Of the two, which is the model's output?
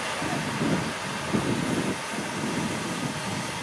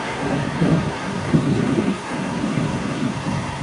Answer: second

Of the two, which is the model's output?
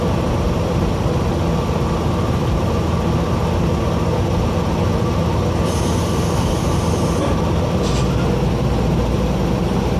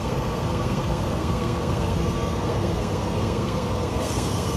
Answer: second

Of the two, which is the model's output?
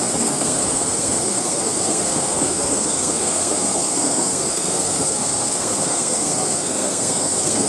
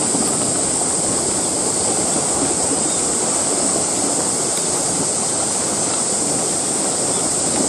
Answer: first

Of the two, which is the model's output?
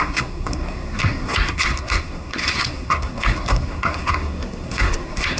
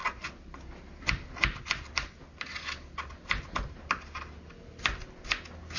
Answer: first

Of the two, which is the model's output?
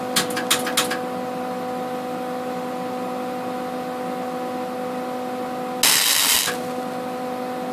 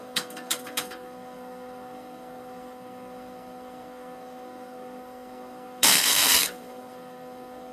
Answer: second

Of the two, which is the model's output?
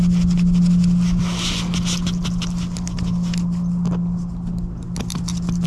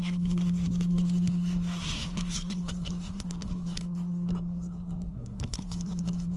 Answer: second